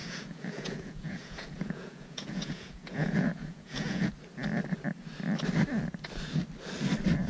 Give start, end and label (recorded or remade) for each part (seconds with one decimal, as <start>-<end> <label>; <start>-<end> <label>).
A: 0.0-4.1 remade; 4.1-7.3 recorded